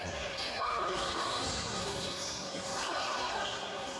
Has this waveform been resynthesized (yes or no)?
yes